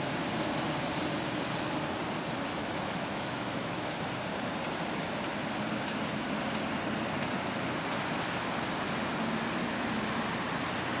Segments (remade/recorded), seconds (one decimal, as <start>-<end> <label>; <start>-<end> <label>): 0.0-2.6 recorded; 2.6-3.7 remade; 3.7-11.0 recorded